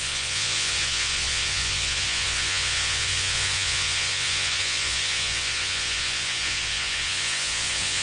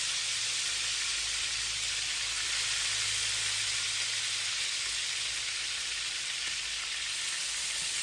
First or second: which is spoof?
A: first